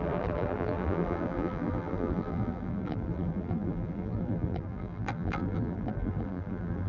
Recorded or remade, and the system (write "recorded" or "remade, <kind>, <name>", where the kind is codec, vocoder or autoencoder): remade, vocoder, BigVGAN v2